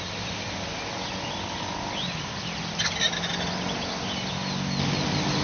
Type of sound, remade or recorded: recorded